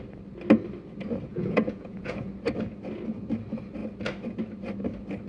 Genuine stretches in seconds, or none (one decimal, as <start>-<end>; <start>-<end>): 0.0-1.3; 2.3-5.3